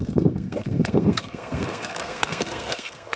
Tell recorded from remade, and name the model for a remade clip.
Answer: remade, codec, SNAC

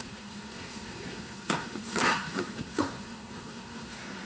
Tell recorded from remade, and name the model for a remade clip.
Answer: remade, codec, SNAC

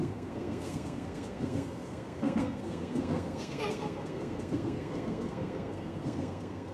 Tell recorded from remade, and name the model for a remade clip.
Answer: remade, codec, SNAC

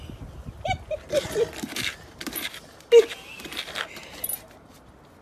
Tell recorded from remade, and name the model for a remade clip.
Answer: recorded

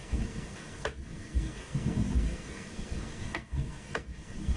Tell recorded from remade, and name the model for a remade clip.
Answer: remade, codec, SNAC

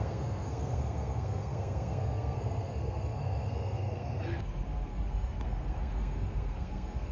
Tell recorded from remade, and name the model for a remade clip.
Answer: remade, codec, SNAC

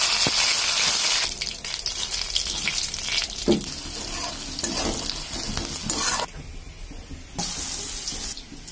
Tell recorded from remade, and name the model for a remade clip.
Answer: recorded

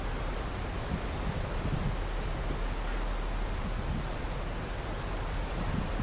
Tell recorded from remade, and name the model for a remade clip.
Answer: recorded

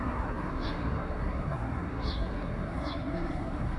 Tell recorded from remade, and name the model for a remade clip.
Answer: remade, codec, SNAC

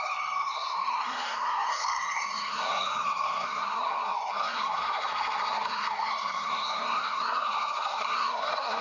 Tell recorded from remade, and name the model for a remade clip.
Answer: remade, codec, SNAC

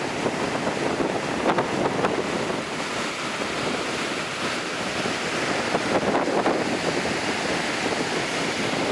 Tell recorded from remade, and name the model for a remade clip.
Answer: recorded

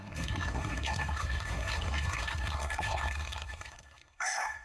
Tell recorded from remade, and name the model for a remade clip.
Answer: remade, codec, SNAC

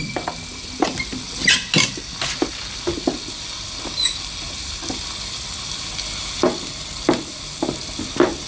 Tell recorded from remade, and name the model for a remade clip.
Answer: recorded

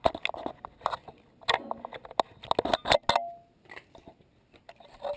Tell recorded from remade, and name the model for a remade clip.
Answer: recorded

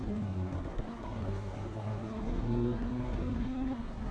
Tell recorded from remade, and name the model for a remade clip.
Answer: remade, codec, SNAC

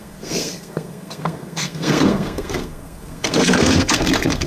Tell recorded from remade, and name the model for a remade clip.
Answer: remade, codec, SNAC